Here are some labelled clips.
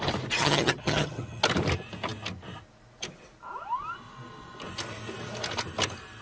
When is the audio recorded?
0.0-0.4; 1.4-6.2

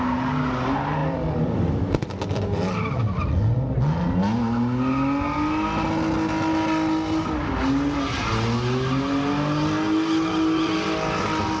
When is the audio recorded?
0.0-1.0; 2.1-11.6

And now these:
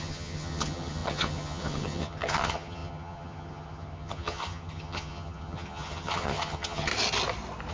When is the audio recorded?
6.9-7.7

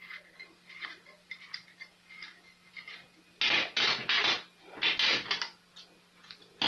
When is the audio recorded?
0.0-6.7

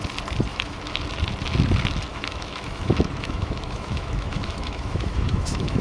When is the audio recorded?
0.0-0.5; 1.0-2.1

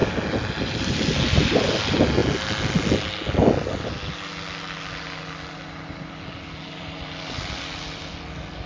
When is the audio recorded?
0.0-0.6; 2.2-6.8

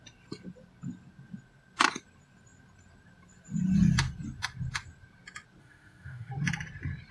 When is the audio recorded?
0.0-5.6; 6.3-7.1

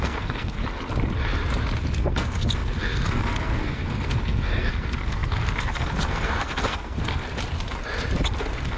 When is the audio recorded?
0.6-2.0; 7.2-8.4